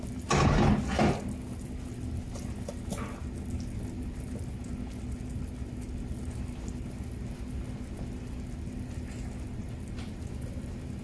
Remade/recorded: recorded